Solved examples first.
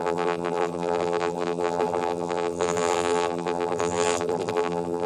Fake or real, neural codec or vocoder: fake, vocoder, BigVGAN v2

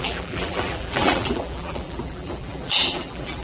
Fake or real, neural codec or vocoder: fake, vocoder, BigVGAN v2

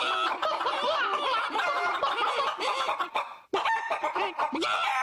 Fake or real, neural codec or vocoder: real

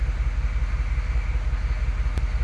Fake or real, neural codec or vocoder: real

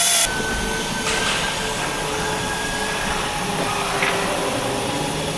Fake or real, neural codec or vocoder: real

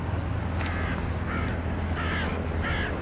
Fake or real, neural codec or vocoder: real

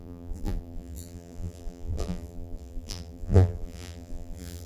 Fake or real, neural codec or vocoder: fake, vocoder, BigVGAN v2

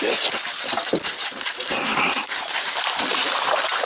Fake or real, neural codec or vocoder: real